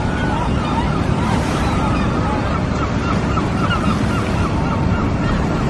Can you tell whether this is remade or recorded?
remade